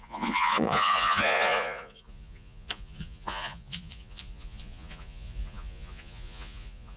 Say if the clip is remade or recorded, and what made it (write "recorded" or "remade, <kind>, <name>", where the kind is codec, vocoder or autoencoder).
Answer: remade, vocoder, Vocos